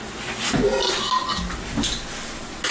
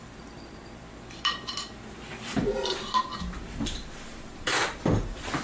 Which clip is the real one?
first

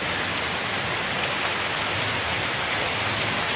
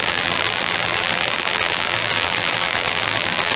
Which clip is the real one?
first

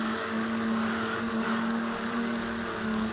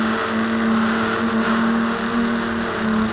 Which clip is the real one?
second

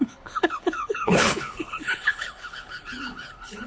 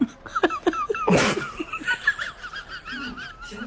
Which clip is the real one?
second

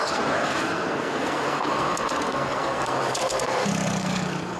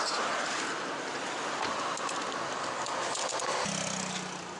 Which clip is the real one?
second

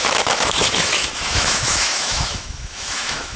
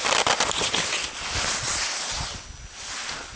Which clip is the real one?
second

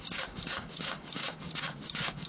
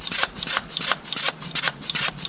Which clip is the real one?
second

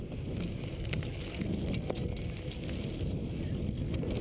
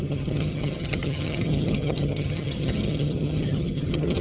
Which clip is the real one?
first